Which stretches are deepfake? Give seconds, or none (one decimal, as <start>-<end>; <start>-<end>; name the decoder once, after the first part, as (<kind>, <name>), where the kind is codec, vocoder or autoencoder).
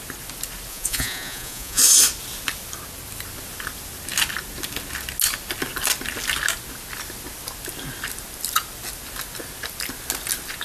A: 0.7-1.8 (vocoder, Vocos)